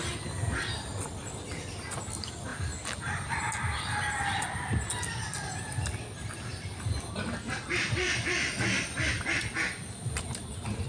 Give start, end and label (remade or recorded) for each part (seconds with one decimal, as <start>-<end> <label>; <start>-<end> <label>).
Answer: 0.0-10.9 recorded